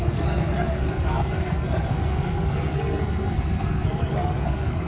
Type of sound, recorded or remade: remade